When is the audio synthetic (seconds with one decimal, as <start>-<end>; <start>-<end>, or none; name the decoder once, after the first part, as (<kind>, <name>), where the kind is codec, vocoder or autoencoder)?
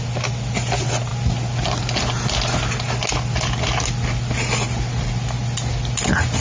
none